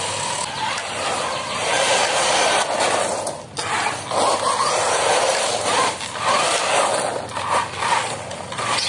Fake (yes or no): no